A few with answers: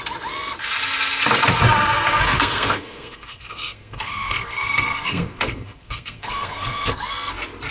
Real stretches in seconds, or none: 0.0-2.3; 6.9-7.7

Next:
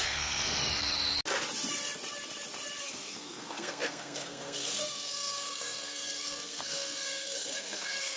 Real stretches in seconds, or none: 0.6-2.8